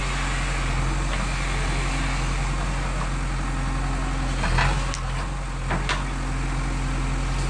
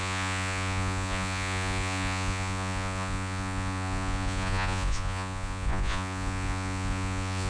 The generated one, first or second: second